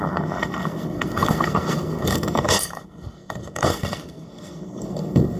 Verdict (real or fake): fake